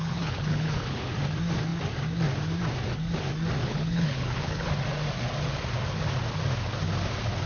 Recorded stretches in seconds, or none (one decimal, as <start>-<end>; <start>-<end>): 1.1-3.6; 4.7-7.5